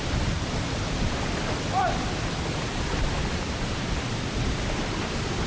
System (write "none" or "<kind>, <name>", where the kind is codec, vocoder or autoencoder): none